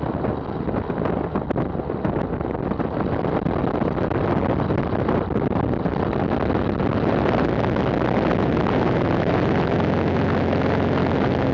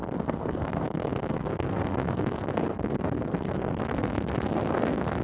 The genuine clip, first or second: first